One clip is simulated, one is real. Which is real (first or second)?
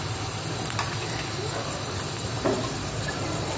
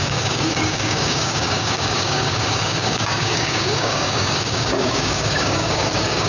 first